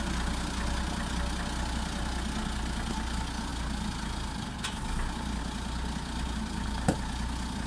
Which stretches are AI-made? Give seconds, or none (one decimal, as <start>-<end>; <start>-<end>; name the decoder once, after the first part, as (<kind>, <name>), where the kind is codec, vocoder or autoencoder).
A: none